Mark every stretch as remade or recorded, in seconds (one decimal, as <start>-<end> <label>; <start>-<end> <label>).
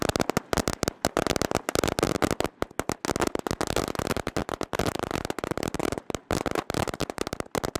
0.0-4.4 recorded; 4.4-5.1 remade; 5.1-7.8 recorded